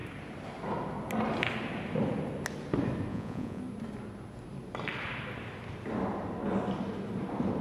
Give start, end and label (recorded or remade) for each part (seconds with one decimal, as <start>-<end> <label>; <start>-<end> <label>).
0.0-3.1 recorded; 3.1-3.6 remade; 3.6-7.6 recorded